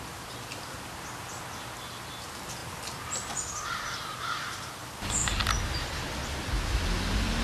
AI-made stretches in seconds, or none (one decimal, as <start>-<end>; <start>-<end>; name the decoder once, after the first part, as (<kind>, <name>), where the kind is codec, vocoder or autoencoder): none